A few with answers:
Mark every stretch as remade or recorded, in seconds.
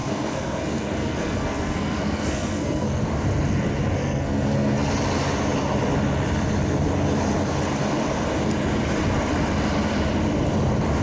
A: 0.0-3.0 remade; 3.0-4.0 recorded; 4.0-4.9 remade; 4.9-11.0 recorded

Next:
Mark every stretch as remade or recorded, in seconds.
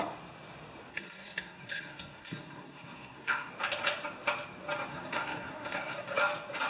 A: 0.0-0.9 recorded; 0.9-3.5 remade; 3.5-4.9 recorded; 4.9-6.2 remade; 6.2-6.7 recorded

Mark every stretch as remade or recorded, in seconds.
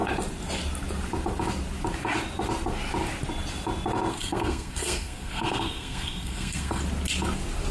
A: 0.0-4.1 recorded; 4.1-6.8 remade; 6.8-7.7 recorded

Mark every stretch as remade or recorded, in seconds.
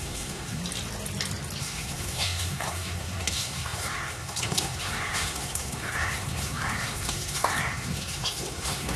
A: 0.0-0.6 remade; 0.6-1.6 recorded; 1.6-9.0 remade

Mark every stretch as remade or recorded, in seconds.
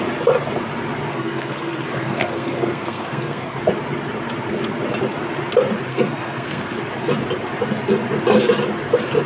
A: 0.0-1.1 recorded; 1.1-3.6 remade; 3.6-5.9 recorded; 5.9-6.8 remade; 6.8-9.3 recorded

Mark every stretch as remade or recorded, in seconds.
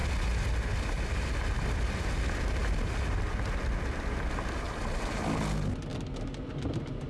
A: 0.0-7.1 recorded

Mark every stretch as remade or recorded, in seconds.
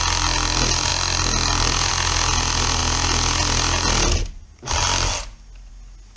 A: 0.0-6.2 recorded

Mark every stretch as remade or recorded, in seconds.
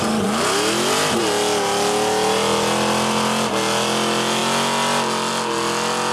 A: 0.0-6.1 recorded